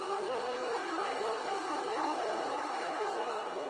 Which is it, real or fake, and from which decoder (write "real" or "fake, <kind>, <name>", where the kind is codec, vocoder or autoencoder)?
fake, codec, SNAC